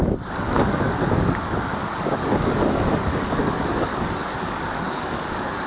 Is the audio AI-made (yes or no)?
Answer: yes